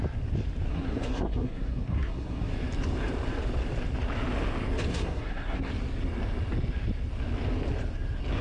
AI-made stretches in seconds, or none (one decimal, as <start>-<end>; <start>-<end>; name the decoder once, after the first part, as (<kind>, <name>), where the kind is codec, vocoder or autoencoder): 0.7-2.5 (codec, SNAC); 4.9-5.7